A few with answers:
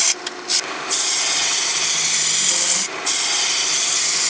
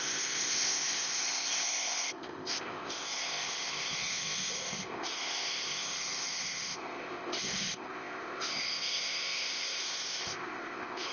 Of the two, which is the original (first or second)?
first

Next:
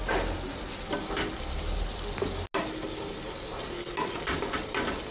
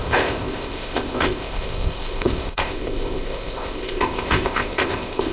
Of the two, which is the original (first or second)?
first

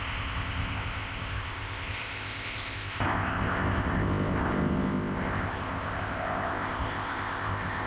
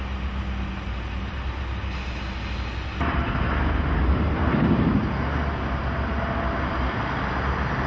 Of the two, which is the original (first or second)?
second